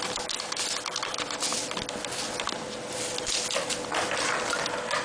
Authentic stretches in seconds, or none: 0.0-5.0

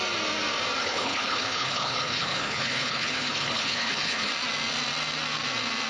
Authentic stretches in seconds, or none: 0.0-0.8; 4.3-5.9

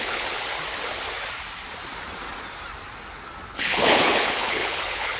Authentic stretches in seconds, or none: 0.4-3.5

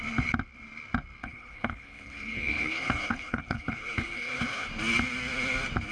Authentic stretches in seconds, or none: 0.0-1.2; 4.7-5.9

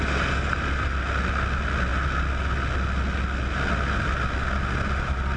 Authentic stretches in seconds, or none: 0.0-5.4

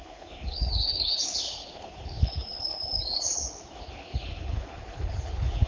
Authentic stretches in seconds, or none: none

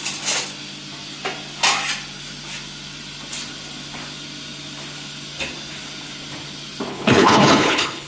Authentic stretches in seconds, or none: 0.0-6.9